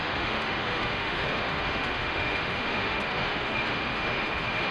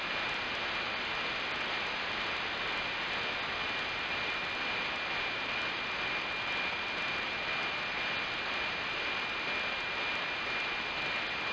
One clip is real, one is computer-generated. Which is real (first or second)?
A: second